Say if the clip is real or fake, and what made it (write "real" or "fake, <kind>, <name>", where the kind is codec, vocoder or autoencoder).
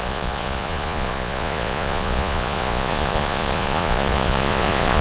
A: fake, vocoder, Vocos